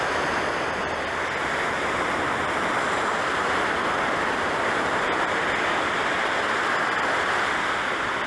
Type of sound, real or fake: real